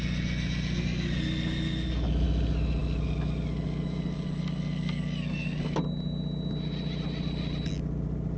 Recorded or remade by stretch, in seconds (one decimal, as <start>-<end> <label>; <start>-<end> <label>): 0.0-8.4 recorded